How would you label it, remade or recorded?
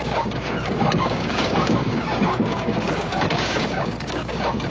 remade